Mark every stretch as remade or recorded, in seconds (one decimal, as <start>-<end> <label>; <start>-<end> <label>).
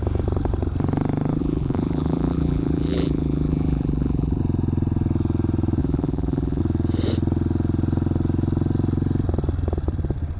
0.0-1.4 recorded; 1.4-4.4 remade; 4.4-5.8 recorded; 5.8-6.6 remade; 6.6-10.4 recorded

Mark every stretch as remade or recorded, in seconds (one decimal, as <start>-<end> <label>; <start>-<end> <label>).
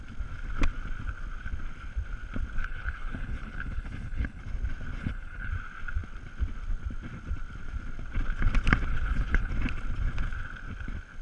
0.0-2.6 recorded; 2.6-4.4 remade; 4.4-5.0 recorded; 5.0-5.5 remade; 5.5-8.9 recorded; 8.9-9.5 remade; 9.5-11.2 recorded